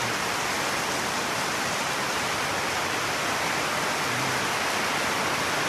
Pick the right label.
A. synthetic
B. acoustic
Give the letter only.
B